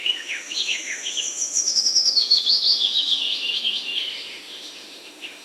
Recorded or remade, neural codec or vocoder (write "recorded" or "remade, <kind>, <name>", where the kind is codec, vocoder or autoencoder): remade, autoencoder, DAC-VAE